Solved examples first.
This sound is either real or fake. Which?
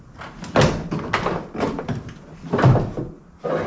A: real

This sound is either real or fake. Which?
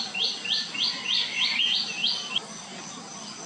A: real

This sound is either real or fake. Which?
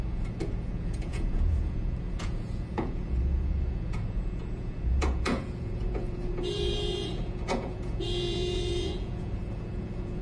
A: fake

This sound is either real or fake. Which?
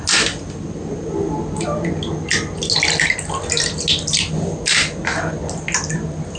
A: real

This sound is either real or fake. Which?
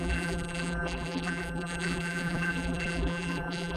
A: fake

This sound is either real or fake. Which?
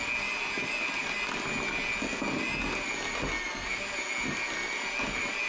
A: real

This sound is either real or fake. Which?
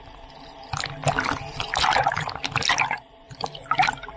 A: real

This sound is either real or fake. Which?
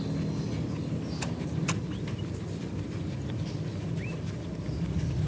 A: real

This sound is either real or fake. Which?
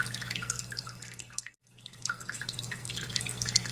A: fake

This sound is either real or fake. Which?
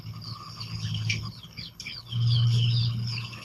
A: fake